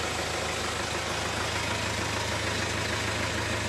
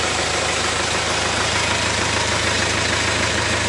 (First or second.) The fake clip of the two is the second